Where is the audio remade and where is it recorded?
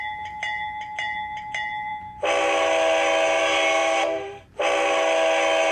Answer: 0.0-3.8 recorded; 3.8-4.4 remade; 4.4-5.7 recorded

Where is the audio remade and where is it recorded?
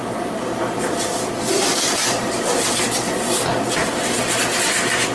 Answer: 0.0-3.1 remade; 3.1-5.1 recorded